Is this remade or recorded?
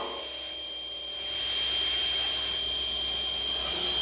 recorded